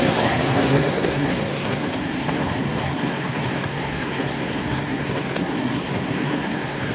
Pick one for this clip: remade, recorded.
remade